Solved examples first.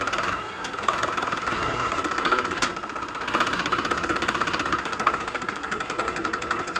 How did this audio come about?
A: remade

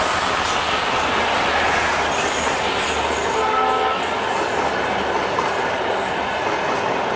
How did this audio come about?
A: recorded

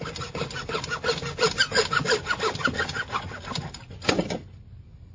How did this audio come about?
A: recorded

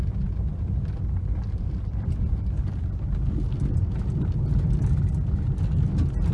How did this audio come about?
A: recorded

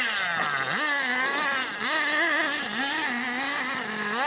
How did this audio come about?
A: recorded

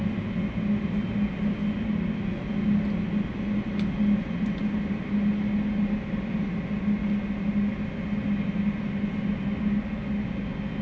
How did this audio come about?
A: recorded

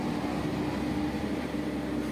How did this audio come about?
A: recorded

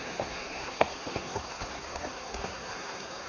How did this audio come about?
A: remade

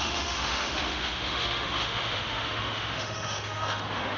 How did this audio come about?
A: remade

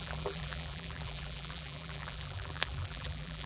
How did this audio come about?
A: remade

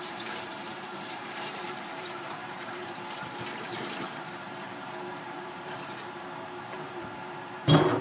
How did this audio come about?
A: remade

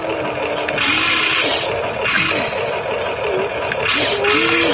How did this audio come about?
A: recorded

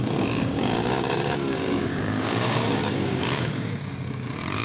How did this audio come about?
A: remade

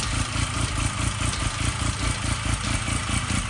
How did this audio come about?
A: recorded